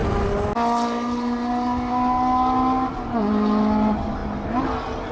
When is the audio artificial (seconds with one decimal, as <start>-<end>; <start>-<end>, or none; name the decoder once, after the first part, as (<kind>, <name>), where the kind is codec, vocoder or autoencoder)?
none